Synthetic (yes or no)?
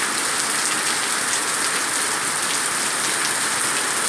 no